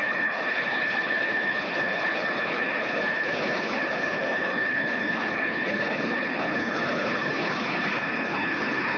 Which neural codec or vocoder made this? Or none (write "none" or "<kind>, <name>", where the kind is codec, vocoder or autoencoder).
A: codec, HILCodec